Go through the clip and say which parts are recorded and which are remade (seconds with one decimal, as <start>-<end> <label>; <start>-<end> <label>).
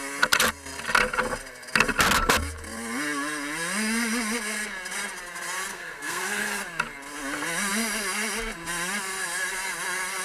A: 0.0-5.7 recorded; 5.7-6.6 remade; 6.6-10.2 recorded